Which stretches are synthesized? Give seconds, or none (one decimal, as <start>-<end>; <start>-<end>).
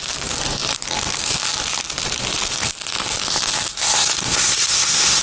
3.7-5.2